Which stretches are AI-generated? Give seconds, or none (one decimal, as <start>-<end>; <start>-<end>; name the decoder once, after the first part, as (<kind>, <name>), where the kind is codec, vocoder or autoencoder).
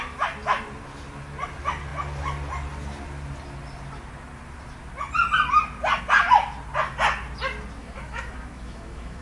7.8-9.2 (autoencoder, DAC-VAE)